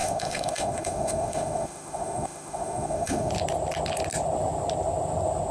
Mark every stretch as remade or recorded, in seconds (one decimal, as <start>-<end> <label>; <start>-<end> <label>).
0.0-3.3 remade; 3.3-5.5 recorded